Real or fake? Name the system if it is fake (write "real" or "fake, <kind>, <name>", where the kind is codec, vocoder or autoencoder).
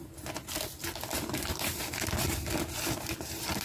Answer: fake, vocoder, BigVGAN v2